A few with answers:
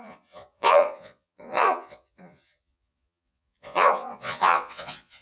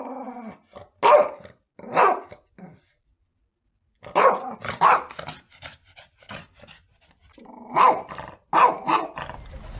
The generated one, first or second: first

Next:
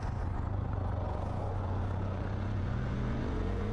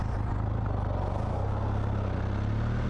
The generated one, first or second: first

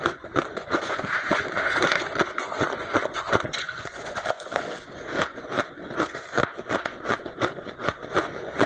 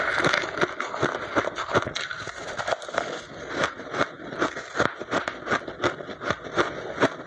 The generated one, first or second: first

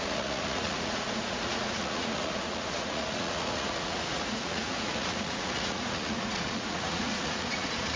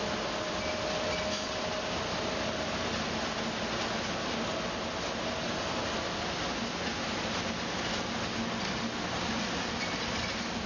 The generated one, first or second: first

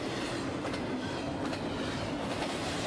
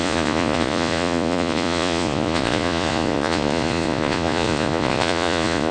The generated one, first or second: second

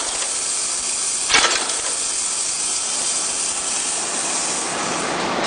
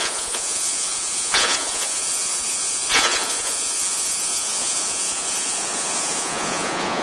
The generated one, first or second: second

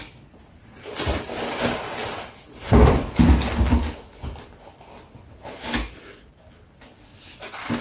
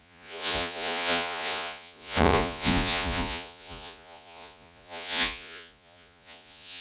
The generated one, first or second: second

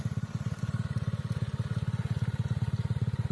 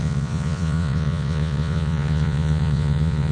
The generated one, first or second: second